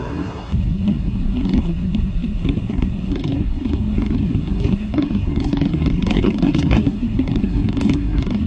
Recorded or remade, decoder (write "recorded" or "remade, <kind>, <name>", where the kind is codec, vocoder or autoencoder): remade, codec, SNAC